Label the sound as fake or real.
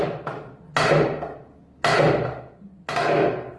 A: real